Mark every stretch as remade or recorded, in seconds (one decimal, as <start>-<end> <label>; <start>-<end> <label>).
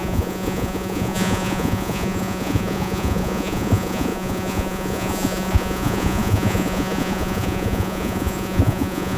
0.0-9.2 remade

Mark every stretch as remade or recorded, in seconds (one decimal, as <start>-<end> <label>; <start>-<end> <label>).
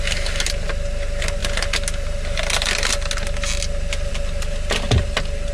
0.0-5.5 recorded